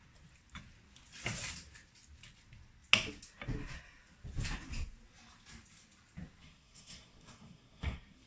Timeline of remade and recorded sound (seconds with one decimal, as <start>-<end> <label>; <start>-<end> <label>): 0.0-6.4 recorded; 6.4-8.3 remade